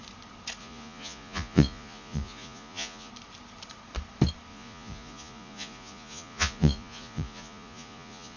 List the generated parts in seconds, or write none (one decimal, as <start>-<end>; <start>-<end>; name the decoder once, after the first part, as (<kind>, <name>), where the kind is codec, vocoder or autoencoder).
0.6-3.1 (vocoder, Vocos); 4.5-8.4